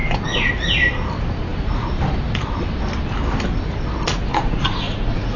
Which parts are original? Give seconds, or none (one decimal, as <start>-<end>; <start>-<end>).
0.5-4.3